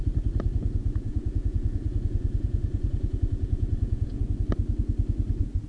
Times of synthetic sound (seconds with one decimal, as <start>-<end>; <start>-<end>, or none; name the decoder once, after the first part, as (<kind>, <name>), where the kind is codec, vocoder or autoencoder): 0.8-4.2 (vocoder, Vocos)